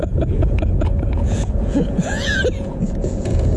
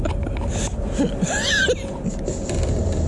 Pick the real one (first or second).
second